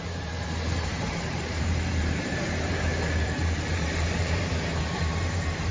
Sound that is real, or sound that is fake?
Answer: fake